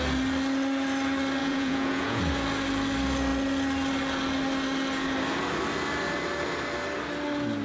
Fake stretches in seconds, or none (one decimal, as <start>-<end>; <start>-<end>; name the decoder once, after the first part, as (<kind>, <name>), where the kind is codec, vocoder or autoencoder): 1.4-2.2 (vocoder, Vocos)